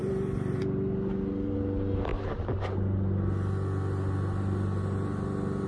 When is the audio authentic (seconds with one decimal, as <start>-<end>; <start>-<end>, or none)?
0.6-5.7